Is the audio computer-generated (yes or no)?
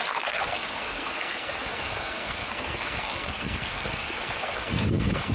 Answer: yes